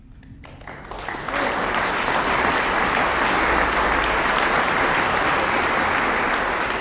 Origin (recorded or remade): recorded